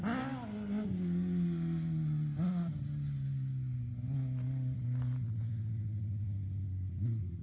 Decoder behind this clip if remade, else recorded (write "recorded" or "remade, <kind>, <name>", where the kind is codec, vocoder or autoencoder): recorded